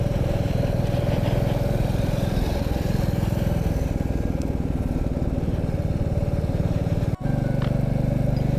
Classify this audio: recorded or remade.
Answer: recorded